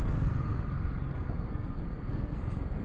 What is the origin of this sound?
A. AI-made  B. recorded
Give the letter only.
A